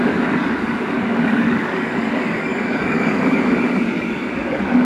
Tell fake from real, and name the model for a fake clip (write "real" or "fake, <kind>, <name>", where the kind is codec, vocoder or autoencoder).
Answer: fake, codec, DAC